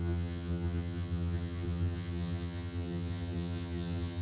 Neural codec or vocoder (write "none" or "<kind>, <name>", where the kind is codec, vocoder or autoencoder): vocoder, HiFi-GAN